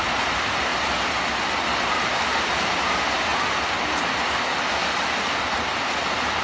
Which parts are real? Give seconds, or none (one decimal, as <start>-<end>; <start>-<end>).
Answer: 0.0-6.4